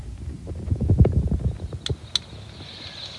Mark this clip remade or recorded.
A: recorded